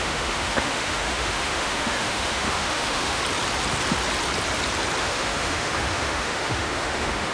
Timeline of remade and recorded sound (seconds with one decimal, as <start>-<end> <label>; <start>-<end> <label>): 0.0-3.2 remade; 3.2-5.0 recorded; 5.0-7.3 remade

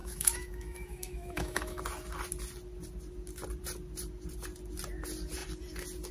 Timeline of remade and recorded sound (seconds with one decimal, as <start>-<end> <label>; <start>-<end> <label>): 0.0-1.8 remade; 1.8-6.1 recorded

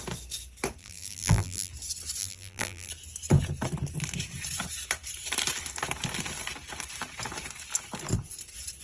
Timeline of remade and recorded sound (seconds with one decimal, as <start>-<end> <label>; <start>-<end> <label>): 0.0-0.8 recorded; 0.8-1.7 remade; 1.7-2.2 recorded; 2.2-2.9 remade; 2.9-8.8 recorded

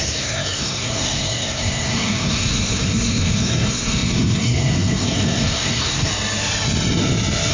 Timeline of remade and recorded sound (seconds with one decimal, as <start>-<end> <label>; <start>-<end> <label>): 0.0-6.1 remade; 6.1-7.5 recorded

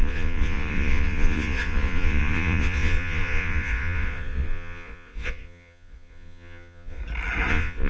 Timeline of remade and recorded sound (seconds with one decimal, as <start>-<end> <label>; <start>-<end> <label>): 0.0-7.0 remade; 7.0-7.5 recorded; 7.5-7.9 remade

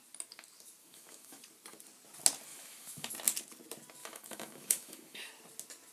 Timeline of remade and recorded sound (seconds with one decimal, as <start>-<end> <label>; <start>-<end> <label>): 0.0-0.8 recorded; 0.8-1.4 remade; 1.4-2.5 recorded; 2.5-3.1 remade; 3.1-4.0 recorded; 4.0-5.3 remade; 5.3-5.9 recorded

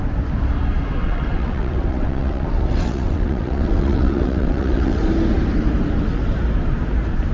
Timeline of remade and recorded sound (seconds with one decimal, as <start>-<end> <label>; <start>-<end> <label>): 0.0-1.0 recorded; 1.0-5.0 remade; 5.0-7.3 recorded